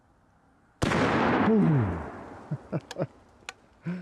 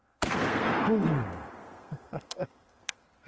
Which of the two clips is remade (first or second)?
second